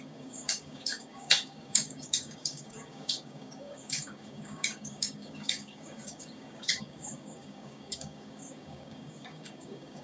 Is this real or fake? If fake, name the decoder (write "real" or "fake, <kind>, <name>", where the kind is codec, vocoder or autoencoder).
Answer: fake, codec, DAC